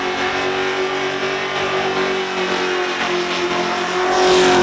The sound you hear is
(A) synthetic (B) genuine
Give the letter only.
B